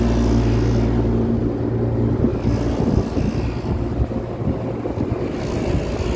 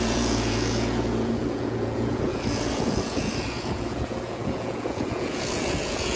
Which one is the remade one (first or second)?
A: second